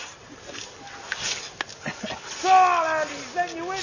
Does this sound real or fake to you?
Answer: real